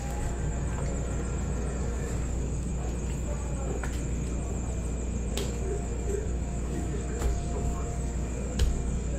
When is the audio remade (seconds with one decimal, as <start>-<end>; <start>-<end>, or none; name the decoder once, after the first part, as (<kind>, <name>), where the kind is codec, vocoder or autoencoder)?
0.0-0.5 (codec, DAC); 1.8-2.7; 5.3-9.2